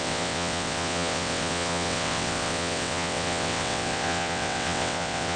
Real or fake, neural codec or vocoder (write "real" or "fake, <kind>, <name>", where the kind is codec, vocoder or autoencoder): fake, vocoder, WaveNeXt